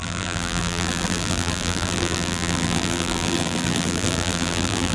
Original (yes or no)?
no